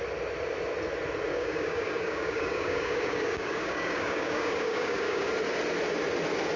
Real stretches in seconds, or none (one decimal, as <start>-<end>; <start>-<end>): 0.0-1.3; 5.3-6.6